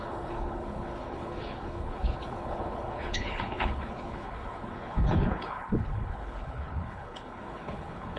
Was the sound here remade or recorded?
remade